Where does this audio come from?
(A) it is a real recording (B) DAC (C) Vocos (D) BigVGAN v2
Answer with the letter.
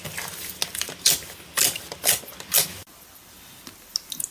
A